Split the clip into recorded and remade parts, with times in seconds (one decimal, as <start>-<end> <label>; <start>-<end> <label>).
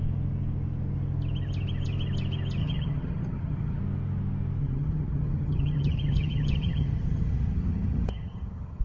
0.0-2.6 recorded; 2.6-3.8 remade; 3.8-4.6 recorded; 4.6-8.8 remade